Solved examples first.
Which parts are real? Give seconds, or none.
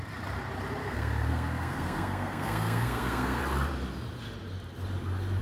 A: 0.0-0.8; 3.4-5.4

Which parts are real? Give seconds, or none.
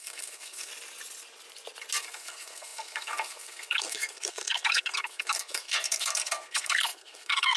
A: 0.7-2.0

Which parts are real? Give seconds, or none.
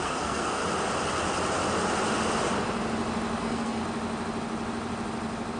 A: 0.6-3.4; 3.8-5.6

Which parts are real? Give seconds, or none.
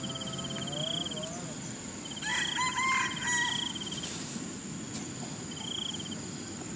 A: 0.0-6.8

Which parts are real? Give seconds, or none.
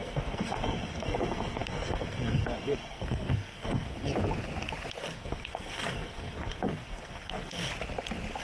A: 4.1-5.0; 7.7-8.4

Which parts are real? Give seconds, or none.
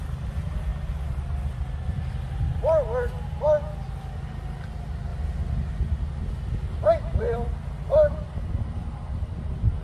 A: 0.0-9.8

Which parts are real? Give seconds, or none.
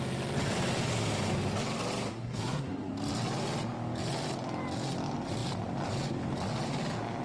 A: 0.0-2.1; 2.9-7.2